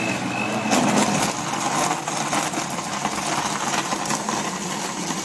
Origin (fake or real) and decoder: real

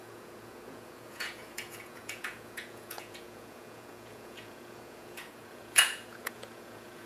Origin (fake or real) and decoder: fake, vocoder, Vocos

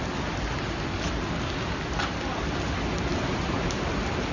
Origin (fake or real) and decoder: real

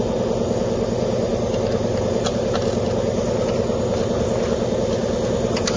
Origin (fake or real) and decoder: real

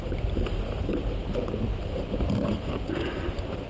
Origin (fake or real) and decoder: real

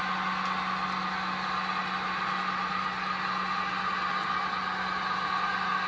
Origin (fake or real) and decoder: real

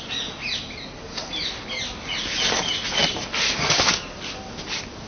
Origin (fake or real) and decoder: real